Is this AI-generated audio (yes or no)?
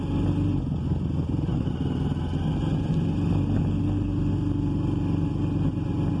no